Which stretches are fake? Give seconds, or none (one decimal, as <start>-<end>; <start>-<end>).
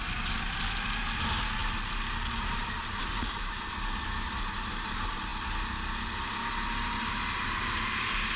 none